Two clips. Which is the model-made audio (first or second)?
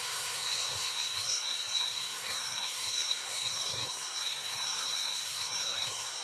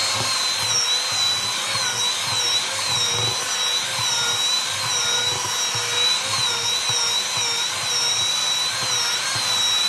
first